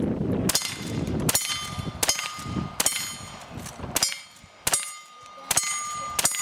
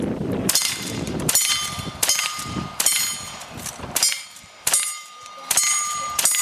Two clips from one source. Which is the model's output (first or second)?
second